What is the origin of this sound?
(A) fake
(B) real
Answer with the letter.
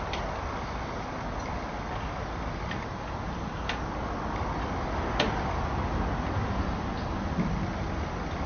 B